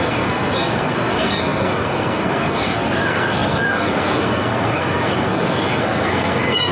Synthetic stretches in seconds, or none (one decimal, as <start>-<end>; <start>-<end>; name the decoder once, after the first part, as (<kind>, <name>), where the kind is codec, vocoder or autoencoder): 0.0-6.7 (codec, SNAC)